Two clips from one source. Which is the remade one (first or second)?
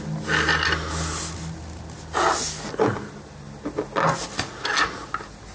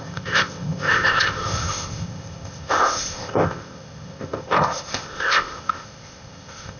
second